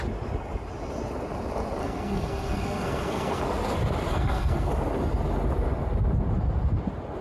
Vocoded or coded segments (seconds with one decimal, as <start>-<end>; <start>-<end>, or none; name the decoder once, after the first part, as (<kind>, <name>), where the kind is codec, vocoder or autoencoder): 1.8-3.4 (codec, SNAC); 4.1-4.7